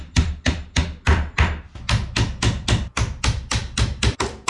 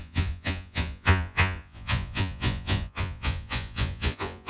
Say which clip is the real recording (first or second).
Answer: first